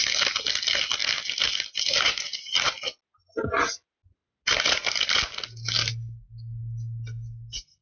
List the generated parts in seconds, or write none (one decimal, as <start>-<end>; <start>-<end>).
none